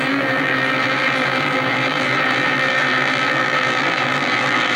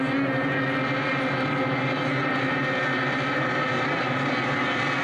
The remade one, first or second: first